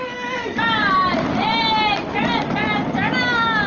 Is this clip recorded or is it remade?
recorded